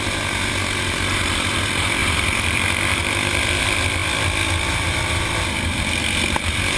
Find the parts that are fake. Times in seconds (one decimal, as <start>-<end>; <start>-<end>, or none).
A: 0.0-6.8